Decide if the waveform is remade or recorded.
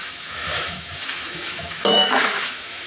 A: remade